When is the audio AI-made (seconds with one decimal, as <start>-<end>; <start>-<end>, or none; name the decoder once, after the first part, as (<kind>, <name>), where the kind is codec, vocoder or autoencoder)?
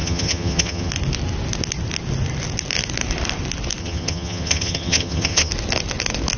0.0-0.9 (vocoder, HiFi-GAN); 3.8-5.5